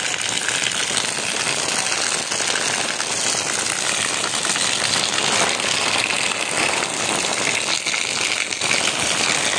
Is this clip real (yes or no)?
yes